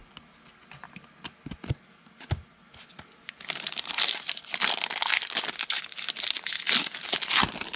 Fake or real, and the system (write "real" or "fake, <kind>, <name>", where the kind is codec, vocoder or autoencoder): real